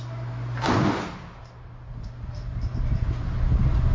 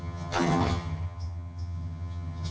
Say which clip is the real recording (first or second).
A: first